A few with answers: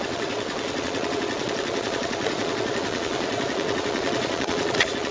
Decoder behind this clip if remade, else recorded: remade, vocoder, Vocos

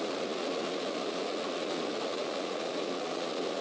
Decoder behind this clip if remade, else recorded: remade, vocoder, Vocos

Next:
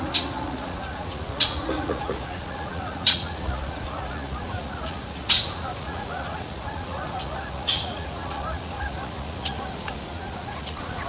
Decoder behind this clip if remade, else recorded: remade, vocoder, Vocos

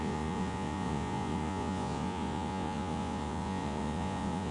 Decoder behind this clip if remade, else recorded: remade, vocoder, Vocos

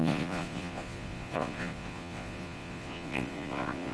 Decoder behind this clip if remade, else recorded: remade, vocoder, Vocos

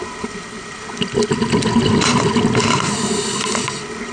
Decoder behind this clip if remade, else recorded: recorded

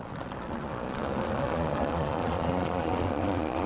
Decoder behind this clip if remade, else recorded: remade, vocoder, Vocos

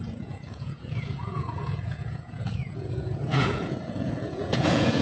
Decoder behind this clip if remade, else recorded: remade, vocoder, Vocos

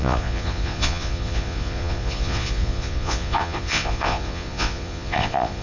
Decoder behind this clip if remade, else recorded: remade, vocoder, Vocos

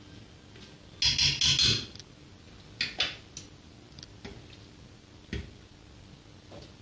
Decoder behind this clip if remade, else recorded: recorded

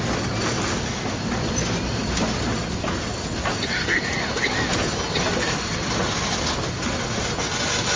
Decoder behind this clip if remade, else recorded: recorded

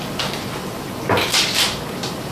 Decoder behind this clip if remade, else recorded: recorded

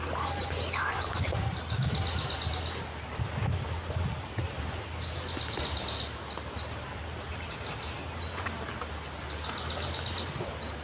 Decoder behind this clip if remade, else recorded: recorded